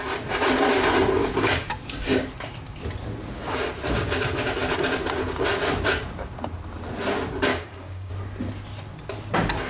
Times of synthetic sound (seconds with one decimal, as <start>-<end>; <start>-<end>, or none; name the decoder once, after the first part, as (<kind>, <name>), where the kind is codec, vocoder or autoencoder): 1.2-1.7 (codec, DAC); 7.5-8.1